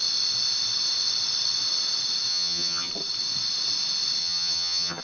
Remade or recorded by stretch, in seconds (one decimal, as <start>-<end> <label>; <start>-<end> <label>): 0.0-2.3 recorded; 2.3-2.9 remade; 2.9-4.2 recorded; 4.2-5.0 remade